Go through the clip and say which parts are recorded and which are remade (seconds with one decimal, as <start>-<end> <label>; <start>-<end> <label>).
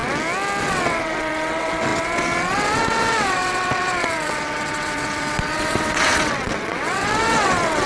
0.0-0.6 recorded; 0.6-7.9 remade